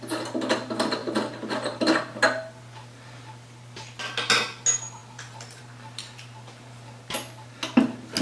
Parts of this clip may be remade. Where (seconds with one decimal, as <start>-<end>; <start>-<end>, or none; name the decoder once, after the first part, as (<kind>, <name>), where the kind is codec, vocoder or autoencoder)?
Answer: none

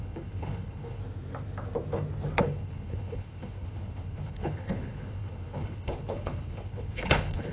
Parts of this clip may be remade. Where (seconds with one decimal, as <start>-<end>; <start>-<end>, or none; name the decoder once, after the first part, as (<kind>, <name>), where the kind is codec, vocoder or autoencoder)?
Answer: 0.0-1.0 (codec, HILCodec); 2.4-7.5

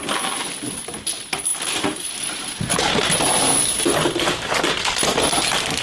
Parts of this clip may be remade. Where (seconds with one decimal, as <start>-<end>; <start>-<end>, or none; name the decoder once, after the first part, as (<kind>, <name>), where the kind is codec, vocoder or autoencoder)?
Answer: 1.5-4.4 (vocoder, BigVGAN v2)

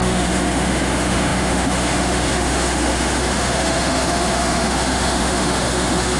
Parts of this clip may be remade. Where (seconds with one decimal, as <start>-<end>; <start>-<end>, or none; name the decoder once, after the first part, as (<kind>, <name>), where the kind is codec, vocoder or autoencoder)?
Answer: 0.0-6.2 (autoencoder, DAC-VAE)

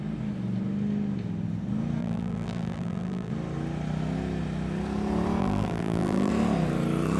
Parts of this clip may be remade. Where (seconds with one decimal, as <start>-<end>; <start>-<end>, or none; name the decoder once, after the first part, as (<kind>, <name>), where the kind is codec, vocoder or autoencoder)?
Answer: 2.0-3.3 (vocoder, BigVGAN v2); 5.4-6.3

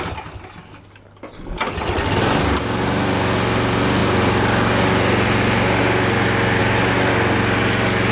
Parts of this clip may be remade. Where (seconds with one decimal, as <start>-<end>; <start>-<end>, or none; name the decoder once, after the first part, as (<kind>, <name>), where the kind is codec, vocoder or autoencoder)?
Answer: none

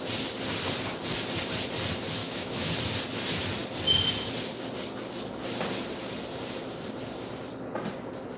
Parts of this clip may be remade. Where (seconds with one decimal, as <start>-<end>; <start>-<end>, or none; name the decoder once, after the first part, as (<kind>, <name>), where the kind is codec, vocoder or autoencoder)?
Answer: 2.2-2.7 (autoencoder, DAC-VAE)